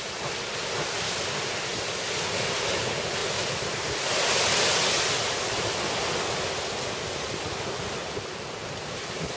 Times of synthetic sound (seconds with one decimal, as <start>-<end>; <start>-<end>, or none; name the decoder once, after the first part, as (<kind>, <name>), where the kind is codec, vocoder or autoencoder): none